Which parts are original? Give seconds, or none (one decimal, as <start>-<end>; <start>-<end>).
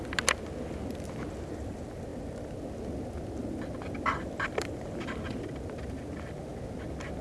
0.0-7.2